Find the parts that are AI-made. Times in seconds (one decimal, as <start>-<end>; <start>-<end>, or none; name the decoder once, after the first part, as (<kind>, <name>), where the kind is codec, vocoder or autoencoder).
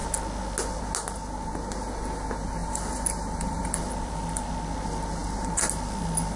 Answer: 2.6-4.5 (vocoder, BigVGAN v2)